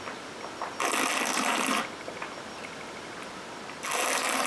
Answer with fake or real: real